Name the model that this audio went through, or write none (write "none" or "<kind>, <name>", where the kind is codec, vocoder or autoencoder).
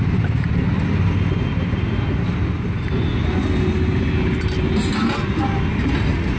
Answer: none